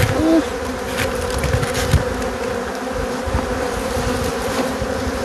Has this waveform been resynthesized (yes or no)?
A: no